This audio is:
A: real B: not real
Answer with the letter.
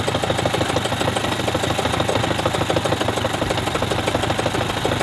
A